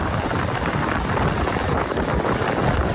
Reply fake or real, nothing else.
real